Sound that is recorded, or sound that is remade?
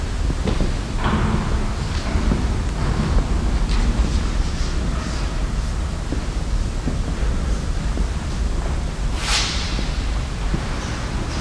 recorded